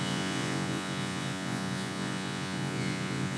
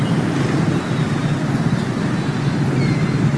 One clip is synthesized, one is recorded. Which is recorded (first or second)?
second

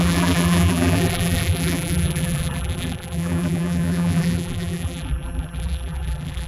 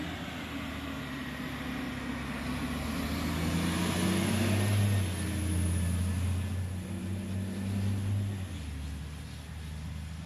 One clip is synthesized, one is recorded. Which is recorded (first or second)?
second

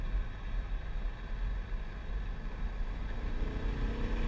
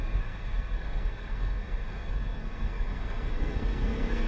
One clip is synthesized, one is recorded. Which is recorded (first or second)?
first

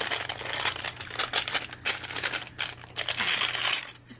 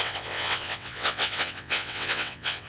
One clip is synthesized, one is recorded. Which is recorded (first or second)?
first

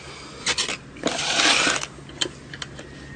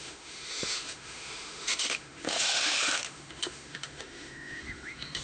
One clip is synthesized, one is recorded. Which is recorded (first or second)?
first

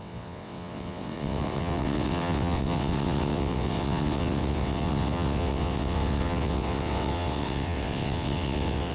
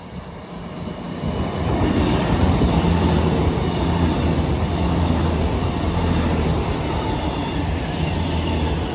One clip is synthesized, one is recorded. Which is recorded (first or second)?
second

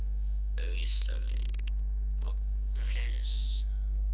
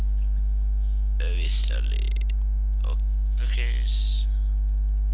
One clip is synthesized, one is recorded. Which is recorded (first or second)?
second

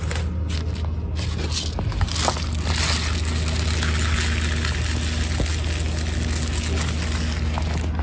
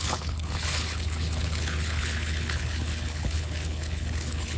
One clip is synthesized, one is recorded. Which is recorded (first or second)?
first